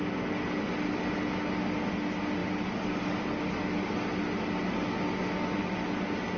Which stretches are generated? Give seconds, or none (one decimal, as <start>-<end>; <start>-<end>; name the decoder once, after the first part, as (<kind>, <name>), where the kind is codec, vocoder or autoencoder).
none